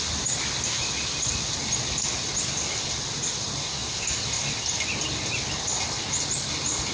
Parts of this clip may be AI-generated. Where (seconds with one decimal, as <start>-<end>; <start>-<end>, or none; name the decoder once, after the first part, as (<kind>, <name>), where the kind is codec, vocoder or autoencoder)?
none